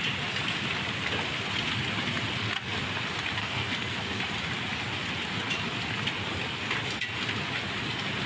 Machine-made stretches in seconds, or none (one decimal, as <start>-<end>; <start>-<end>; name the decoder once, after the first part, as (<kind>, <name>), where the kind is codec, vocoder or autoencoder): 3.4-4.2 (codec, SNAC)